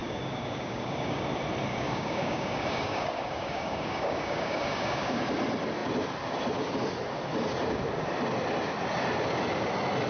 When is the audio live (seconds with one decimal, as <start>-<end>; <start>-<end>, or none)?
1.2-1.7; 5.2-10.1